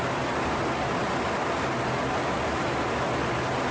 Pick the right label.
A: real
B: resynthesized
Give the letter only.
A